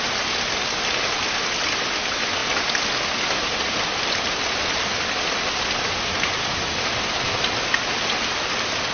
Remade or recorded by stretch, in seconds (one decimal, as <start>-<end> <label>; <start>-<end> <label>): 0.0-8.9 recorded